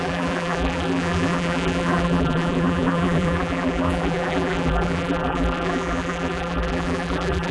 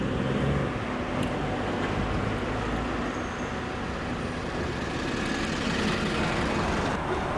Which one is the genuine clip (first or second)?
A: second